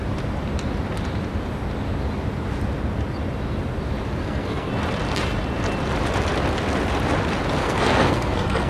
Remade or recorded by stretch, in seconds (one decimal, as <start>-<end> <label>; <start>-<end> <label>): 0.0-4.2 recorded; 4.2-4.7 remade; 4.7-7.6 recorded; 7.6-8.7 remade